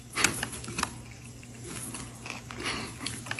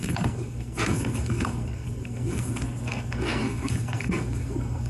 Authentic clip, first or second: first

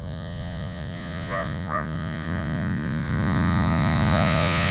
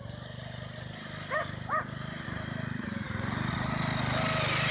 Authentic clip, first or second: second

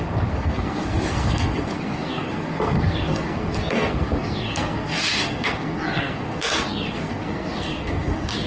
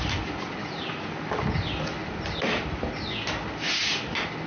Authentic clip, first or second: second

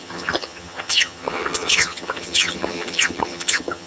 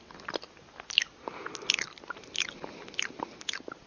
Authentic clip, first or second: second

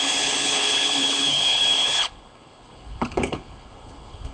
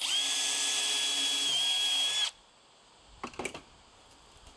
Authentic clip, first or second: second